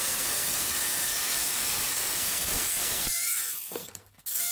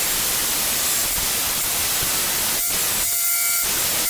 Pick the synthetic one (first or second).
first